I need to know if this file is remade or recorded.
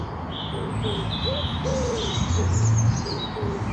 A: recorded